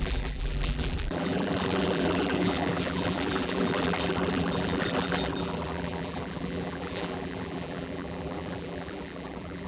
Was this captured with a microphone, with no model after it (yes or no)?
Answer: no